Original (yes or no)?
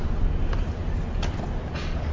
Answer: yes